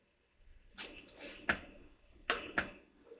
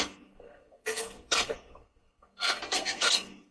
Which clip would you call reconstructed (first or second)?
second